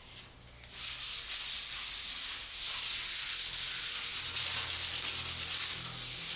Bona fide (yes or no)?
yes